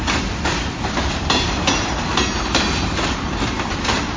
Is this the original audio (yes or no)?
yes